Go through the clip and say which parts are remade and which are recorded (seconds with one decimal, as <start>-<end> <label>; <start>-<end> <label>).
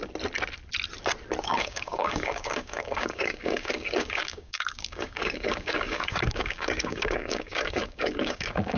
0.0-1.4 recorded; 1.4-8.8 remade